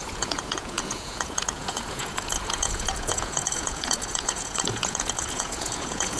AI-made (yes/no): yes